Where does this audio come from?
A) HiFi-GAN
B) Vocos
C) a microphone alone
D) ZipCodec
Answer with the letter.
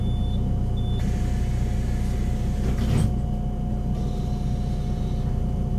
C